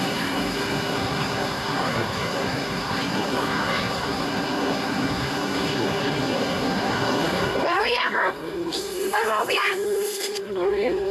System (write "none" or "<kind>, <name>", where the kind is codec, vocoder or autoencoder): codec, SNAC